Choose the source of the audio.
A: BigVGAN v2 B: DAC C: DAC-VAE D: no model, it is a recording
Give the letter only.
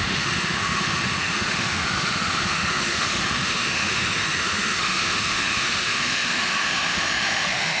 C